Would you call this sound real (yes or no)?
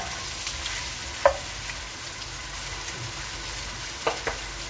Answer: yes